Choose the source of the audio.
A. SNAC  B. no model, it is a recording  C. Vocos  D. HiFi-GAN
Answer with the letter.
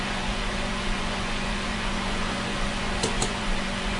C